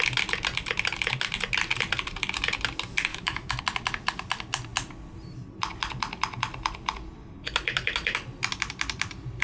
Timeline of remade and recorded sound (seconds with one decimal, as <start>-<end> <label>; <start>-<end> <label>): 0.0-3.1 recorded; 3.1-3.6 remade; 3.6-9.4 recorded